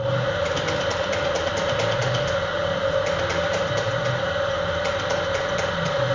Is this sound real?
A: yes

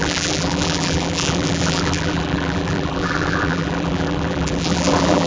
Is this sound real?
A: no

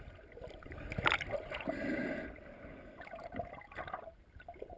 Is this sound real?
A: yes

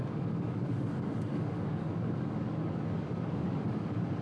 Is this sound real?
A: no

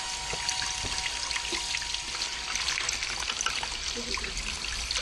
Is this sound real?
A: yes